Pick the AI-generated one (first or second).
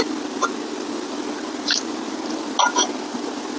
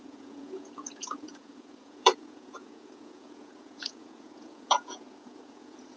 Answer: second